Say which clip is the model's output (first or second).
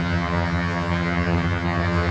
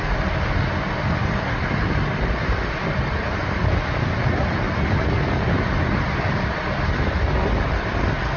first